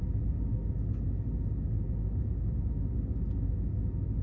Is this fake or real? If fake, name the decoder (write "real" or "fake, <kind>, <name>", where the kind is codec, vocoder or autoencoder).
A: real